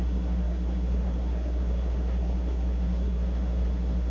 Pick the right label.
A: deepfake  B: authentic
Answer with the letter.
A